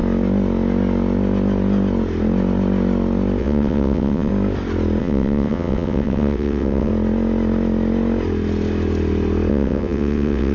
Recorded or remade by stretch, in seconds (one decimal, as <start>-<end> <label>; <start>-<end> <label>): 0.0-3.4 recorded; 3.4-4.3 remade; 4.3-5.0 recorded; 5.0-6.9 remade; 6.9-9.5 recorded; 9.5-10.5 remade